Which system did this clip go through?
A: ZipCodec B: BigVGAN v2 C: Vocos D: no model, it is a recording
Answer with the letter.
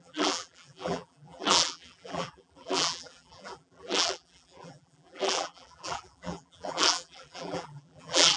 B